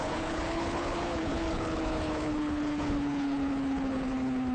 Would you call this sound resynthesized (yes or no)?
yes